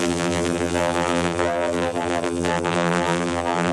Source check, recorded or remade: remade